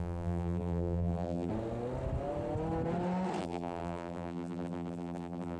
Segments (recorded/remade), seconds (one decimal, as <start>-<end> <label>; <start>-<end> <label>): 0.0-1.5 remade; 1.5-3.4 recorded; 3.4-5.6 remade